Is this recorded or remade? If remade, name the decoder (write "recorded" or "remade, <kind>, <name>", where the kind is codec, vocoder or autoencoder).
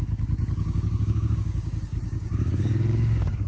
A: remade, codec, DAC